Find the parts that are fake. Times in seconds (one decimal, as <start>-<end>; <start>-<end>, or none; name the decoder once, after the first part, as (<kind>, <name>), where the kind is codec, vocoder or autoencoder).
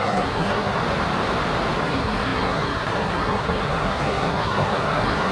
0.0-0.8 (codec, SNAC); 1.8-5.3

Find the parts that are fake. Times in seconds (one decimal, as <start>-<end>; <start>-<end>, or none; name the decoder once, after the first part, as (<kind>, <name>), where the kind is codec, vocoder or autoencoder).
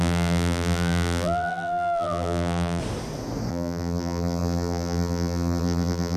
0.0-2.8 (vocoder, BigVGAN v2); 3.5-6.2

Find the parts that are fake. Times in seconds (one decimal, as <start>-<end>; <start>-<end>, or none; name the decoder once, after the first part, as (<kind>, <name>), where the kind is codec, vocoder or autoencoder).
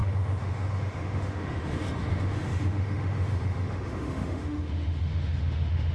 0.0-5.9 (autoencoder, DAC-VAE)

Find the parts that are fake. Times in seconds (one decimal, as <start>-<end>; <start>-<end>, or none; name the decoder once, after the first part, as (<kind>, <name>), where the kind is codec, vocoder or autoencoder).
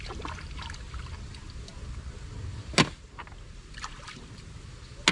none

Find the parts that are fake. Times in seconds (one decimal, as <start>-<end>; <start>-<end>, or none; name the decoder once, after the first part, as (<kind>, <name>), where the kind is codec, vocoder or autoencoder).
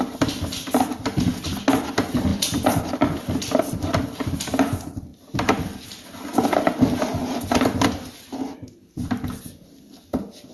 none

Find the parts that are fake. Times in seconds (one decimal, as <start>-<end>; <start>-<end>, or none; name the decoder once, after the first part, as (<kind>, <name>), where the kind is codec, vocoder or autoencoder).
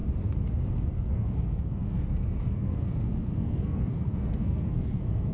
0.9-5.3 (codec, SNAC)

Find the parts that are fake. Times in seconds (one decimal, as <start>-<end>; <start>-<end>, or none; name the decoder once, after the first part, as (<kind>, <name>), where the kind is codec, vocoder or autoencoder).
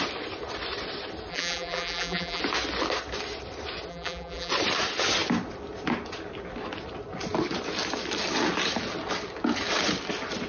1.3-2.4 (vocoder, BigVGAN v2); 3.9-4.5